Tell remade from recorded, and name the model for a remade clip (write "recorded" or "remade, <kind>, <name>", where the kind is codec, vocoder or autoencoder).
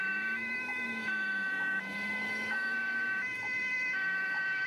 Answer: remade, autoencoder, DAC-VAE